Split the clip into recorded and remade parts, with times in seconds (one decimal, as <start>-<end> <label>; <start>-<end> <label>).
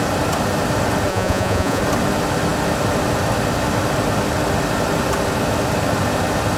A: 0.0-1.1 recorded; 1.1-1.8 remade; 1.8-6.6 recorded